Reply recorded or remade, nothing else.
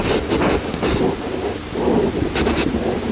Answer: recorded